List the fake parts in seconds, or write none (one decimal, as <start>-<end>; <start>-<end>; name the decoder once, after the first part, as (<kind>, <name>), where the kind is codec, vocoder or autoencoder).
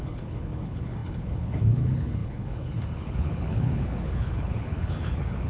0.0-5.5 (codec, HILCodec)